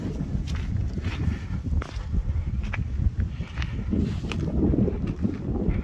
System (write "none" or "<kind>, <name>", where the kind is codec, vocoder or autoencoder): none